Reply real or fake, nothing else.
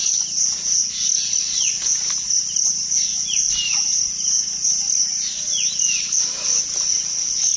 real